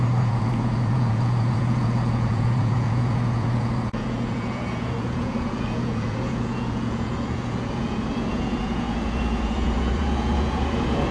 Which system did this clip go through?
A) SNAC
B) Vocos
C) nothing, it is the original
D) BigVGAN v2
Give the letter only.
B